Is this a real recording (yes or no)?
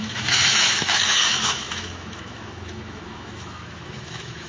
no